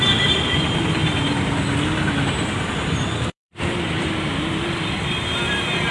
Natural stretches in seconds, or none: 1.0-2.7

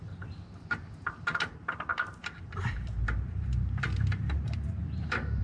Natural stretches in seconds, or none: none

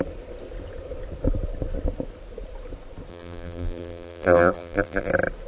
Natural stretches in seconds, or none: 0.0-3.1; 5.1-5.5

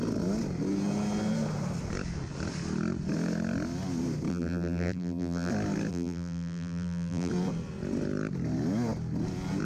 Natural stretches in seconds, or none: 0.0-4.3; 5.5-5.9; 7.3-9.6